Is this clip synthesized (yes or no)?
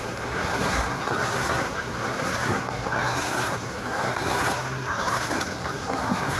yes